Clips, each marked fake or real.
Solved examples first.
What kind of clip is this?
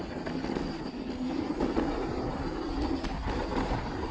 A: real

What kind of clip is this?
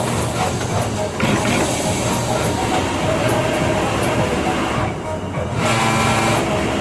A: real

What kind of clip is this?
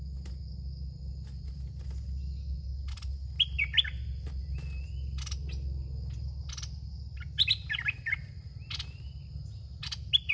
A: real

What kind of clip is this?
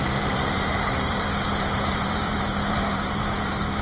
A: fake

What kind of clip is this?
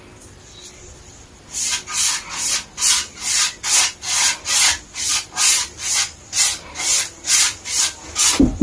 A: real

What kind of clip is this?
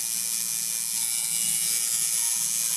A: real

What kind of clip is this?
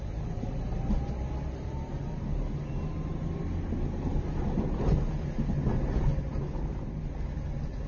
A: real